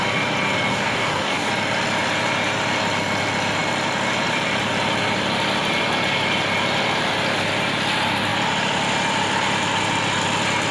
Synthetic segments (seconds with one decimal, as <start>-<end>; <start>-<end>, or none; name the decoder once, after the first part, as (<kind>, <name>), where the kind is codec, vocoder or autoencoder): 0.7-1.5 (codec, DAC)